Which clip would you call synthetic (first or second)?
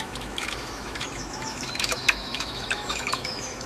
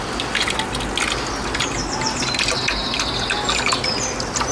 first